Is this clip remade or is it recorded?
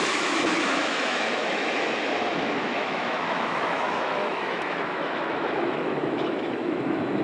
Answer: remade